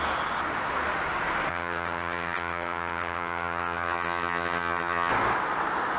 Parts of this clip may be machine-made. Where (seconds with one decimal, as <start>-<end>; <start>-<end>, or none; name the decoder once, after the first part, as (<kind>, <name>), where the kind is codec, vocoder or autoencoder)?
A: 1.5-5.1 (vocoder, HiFi-GAN)